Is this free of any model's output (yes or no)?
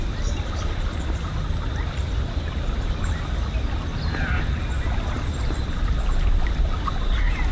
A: yes